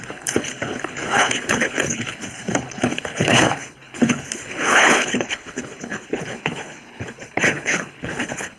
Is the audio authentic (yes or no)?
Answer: no